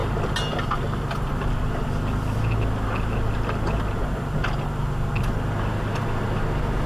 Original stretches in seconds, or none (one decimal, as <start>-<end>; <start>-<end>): 0.0-6.9